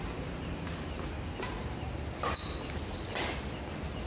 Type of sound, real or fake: real